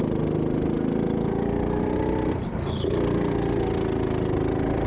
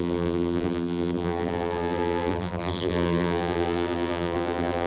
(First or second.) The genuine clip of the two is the first